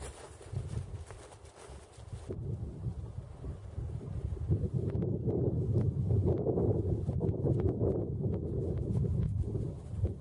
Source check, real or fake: real